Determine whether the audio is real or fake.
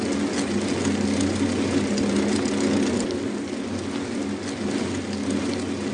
real